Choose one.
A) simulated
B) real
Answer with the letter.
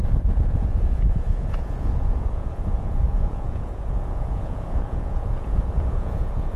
A